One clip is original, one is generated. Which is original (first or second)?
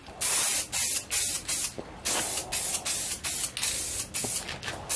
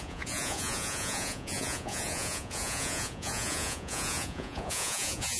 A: first